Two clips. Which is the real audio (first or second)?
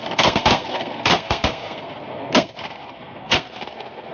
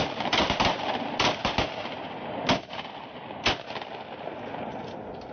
second